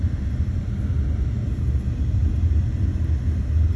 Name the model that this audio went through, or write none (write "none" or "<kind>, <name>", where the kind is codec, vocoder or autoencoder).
none